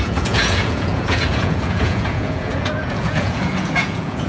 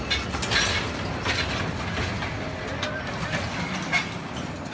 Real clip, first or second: second